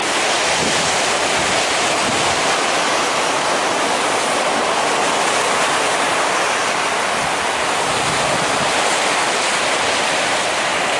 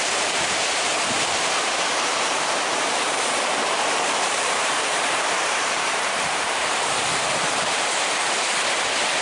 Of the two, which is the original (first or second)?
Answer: first